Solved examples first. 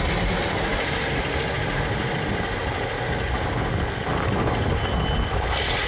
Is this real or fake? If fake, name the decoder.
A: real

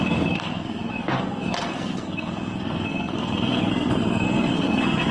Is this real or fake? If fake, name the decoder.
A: fake, codec, SNAC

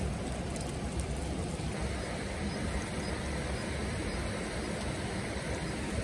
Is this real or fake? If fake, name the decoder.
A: real